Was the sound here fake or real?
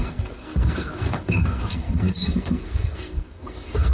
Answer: fake